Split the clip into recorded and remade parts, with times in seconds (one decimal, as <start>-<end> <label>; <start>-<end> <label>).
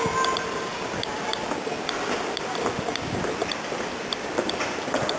0.0-0.7 recorded; 0.7-1.9 remade; 1.9-3.4 recorded; 3.4-4.7 remade; 4.7-5.2 recorded